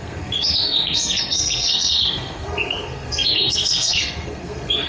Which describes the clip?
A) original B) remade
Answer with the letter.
B